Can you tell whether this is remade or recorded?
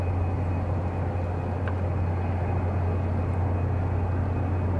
recorded